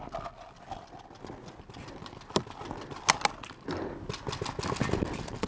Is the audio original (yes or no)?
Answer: yes